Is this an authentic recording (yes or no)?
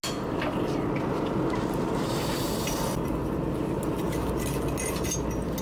yes